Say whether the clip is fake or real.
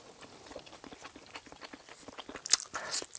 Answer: real